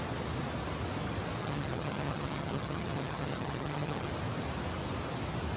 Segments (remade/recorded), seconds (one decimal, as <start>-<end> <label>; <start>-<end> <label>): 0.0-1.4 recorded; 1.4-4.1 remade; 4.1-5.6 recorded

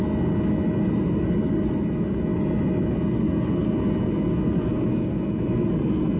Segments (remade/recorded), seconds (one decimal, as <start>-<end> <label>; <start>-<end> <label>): 0.0-6.2 recorded

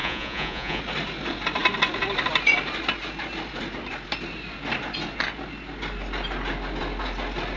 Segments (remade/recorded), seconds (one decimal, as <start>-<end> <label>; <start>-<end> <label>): 0.0-0.8 remade; 0.8-7.6 recorded

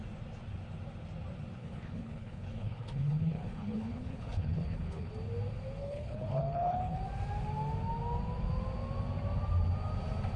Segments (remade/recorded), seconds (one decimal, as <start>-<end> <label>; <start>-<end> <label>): 0.0-1.6 recorded; 1.6-5.1 remade; 5.1-5.8 recorded; 5.8-7.0 remade; 7.0-10.4 recorded